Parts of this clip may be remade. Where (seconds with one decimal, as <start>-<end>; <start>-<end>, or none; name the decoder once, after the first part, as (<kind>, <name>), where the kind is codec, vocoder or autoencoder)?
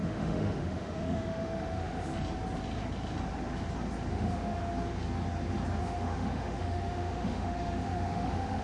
0.0-2.1 (autoencoder, DAC-VAE); 4.1-4.6; 5.8-8.6